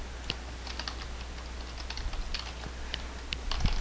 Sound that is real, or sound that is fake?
real